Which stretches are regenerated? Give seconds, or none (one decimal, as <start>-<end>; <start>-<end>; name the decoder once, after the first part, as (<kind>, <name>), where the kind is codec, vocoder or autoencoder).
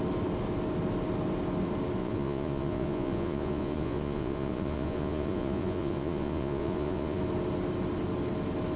2.0-7.2 (vocoder, Vocos)